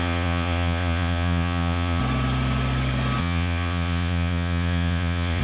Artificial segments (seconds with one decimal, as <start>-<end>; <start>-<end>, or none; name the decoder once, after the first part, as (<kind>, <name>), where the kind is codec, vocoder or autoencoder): 0.0-2.0 (vocoder, Vocos); 3.2-5.4